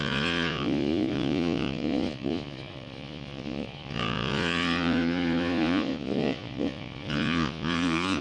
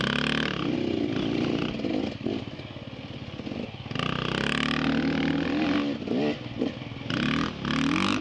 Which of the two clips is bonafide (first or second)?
second